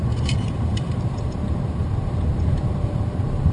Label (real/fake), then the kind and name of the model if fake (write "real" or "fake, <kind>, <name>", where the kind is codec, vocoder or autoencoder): fake, vocoder, BigVGAN v2